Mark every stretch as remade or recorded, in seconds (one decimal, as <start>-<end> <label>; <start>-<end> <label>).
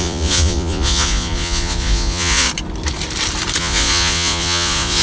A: 0.0-2.5 remade; 2.5-3.6 recorded; 3.6-5.0 remade